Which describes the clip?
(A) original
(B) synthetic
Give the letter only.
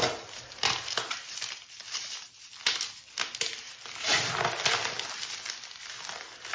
A